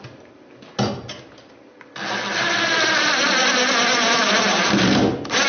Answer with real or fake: real